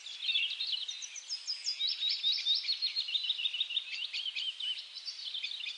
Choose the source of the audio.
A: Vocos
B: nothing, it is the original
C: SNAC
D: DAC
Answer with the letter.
B